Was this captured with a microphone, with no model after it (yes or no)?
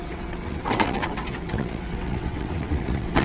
no